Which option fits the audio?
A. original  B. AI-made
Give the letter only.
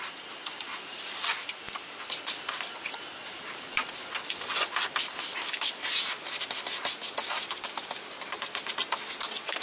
A